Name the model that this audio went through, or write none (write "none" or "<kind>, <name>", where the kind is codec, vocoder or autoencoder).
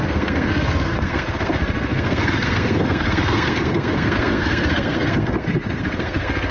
codec, SNAC